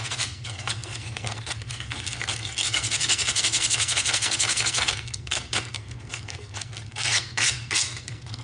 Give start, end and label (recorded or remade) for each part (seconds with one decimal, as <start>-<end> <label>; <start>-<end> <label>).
0.0-8.4 remade